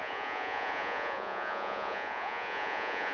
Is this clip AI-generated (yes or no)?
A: yes